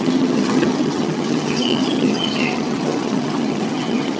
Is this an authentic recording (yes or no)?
no